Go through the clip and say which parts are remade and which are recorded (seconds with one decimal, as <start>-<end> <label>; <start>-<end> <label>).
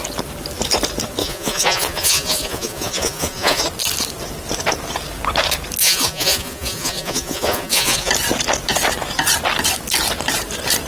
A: 0.0-1.2 recorded; 1.2-3.6 remade; 3.6-5.8 recorded; 5.8-8.1 remade; 8.1-10.9 recorded